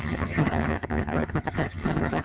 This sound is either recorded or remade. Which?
remade